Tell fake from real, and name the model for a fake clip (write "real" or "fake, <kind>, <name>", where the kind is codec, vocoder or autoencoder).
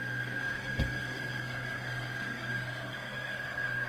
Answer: fake, codec, SNAC